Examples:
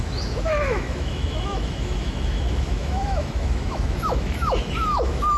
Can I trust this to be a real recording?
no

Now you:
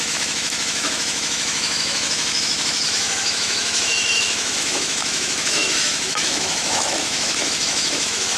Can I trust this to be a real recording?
no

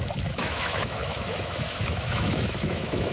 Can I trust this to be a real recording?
no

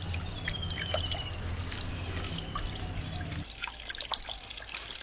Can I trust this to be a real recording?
yes